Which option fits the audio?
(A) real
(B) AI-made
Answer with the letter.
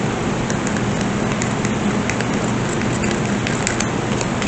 A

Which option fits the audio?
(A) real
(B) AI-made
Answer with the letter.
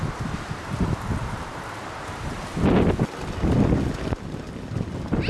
A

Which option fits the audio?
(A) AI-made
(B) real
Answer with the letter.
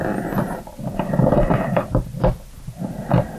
B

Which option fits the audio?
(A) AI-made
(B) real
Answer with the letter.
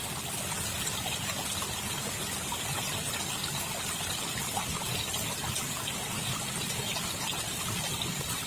B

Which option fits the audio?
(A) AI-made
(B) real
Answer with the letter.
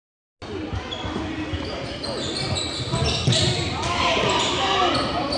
B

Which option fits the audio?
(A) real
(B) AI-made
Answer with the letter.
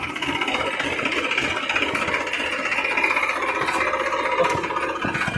A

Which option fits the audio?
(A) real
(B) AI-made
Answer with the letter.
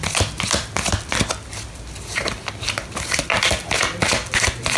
A